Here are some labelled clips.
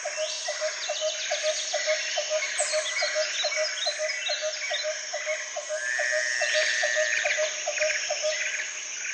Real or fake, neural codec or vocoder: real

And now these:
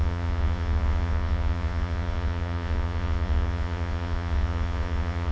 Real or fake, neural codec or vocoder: fake, vocoder, Vocos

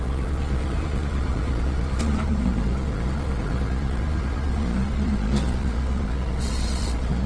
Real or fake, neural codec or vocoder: fake, vocoder, Vocos